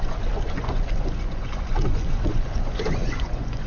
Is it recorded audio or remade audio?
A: remade